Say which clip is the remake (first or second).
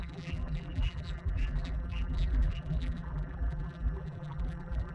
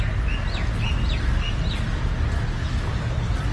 first